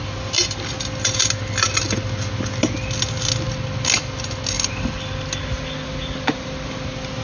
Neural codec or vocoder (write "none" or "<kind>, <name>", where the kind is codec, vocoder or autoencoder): none